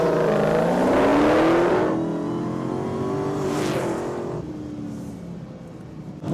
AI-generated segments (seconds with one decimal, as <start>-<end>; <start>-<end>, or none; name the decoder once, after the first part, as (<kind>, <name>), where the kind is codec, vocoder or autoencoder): none